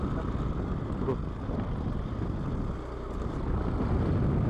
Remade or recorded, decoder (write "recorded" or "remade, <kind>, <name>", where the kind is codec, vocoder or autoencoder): recorded